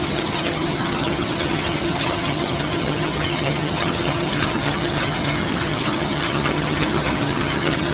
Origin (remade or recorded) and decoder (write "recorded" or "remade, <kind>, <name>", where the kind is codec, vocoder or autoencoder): remade, vocoder, HiFi-GAN